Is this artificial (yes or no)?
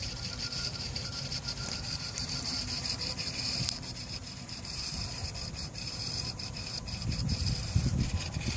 yes